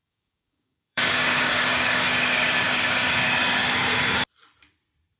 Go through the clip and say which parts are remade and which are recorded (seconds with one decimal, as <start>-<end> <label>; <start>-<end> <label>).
0.0-3.0 remade; 3.0-5.2 recorded